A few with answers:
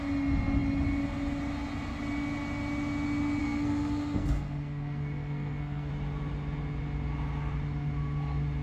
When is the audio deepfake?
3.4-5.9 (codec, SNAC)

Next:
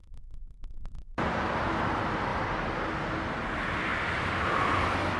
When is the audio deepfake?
0.0-1.1 (codec, SNAC)